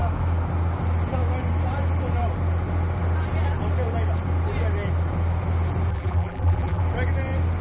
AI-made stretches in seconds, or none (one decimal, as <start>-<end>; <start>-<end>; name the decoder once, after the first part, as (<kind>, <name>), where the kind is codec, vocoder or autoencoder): 5.9-6.8 (vocoder, BigVGAN v2)